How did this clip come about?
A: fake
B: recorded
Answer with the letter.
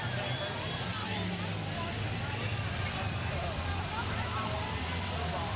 B